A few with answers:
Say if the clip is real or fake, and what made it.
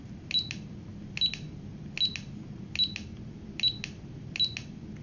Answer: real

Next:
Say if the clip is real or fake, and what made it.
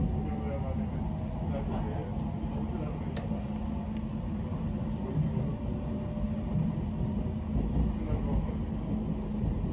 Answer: real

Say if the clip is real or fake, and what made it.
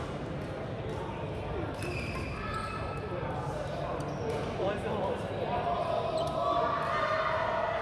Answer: real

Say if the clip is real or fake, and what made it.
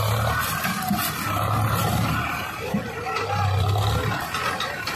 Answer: real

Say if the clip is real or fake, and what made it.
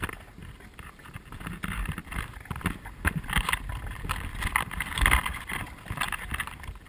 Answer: real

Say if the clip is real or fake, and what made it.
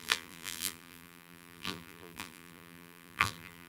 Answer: fake, vocoder, BigVGAN v2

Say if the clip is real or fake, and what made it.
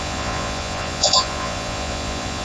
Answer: fake, vocoder, Vocos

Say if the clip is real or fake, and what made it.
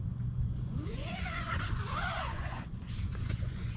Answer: fake, vocoder, Vocos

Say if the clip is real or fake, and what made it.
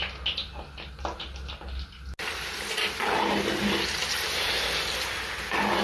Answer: real